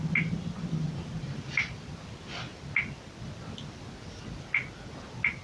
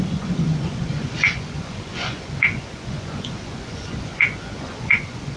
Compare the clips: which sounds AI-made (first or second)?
second